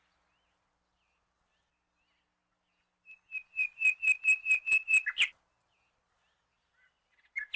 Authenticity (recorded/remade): recorded